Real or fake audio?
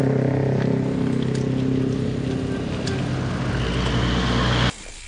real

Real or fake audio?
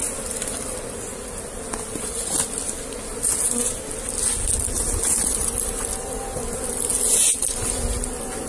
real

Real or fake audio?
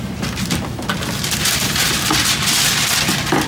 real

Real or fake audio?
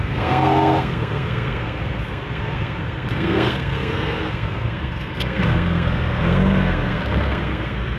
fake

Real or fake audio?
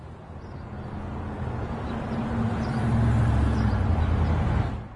real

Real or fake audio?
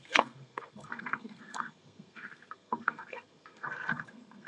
fake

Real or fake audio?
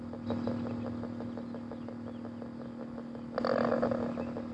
real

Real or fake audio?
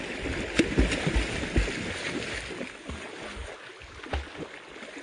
real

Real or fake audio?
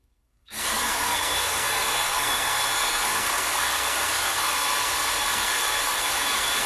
fake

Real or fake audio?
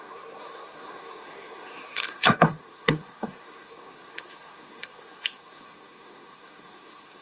fake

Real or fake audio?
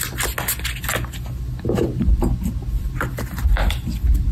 real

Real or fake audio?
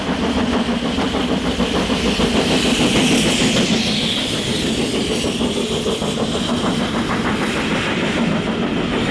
real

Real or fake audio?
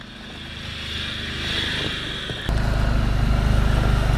real